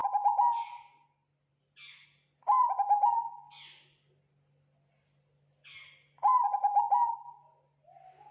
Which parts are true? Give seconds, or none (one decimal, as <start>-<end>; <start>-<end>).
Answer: 0.0-8.3

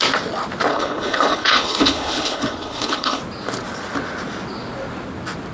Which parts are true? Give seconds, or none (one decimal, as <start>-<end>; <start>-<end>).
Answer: 0.0-0.7; 3.2-5.5

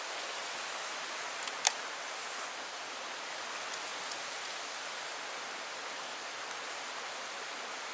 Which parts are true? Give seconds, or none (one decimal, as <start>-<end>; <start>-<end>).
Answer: 0.0-7.9

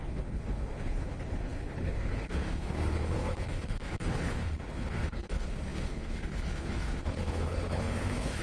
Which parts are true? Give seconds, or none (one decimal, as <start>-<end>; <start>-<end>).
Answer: none

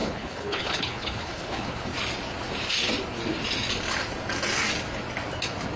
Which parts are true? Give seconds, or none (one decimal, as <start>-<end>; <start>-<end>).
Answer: 1.9-5.8